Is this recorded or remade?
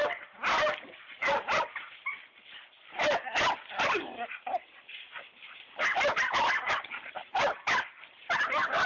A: recorded